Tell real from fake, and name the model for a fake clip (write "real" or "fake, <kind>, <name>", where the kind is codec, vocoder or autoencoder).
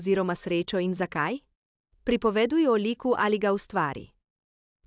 real